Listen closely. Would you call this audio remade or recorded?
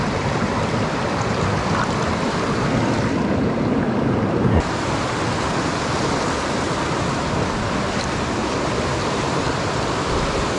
recorded